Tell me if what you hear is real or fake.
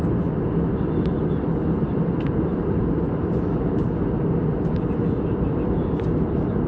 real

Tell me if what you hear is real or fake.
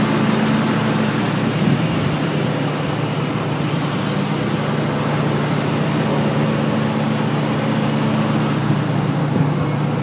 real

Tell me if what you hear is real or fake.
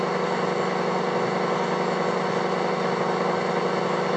real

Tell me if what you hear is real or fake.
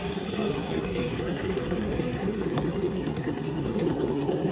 fake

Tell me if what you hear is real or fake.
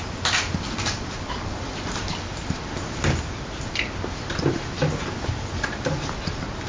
real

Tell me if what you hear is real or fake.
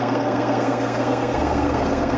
fake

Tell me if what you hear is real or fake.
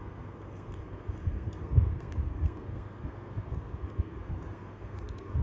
fake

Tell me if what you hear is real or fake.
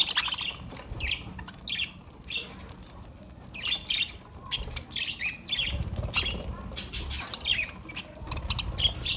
real